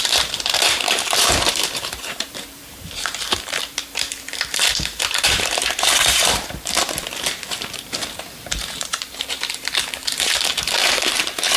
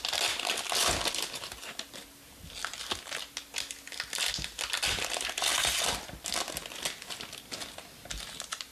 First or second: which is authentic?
second